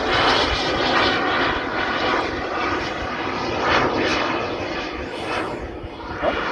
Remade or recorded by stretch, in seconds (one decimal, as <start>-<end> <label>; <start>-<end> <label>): 0.0-6.5 recorded